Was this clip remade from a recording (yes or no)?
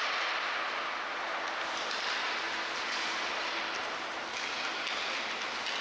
no